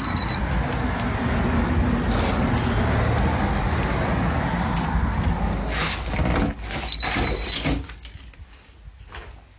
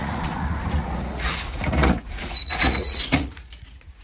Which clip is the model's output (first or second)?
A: second